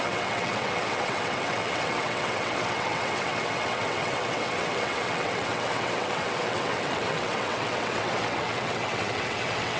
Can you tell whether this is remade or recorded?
remade